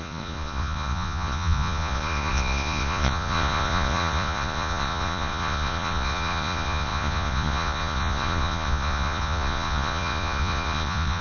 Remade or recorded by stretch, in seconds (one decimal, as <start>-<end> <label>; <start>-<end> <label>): 0.0-11.2 remade